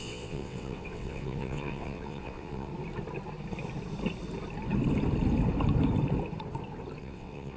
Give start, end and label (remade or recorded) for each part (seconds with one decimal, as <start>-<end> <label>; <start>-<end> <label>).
0.0-2.7 remade; 2.7-7.0 recorded; 7.0-7.6 remade